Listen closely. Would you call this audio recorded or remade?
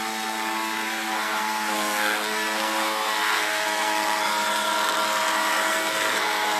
remade